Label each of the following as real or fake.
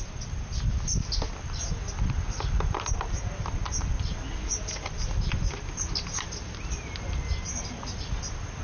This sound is real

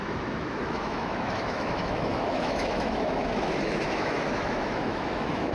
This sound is fake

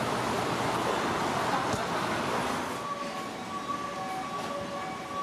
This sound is real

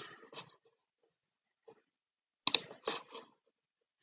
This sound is real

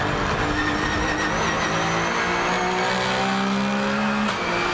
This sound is real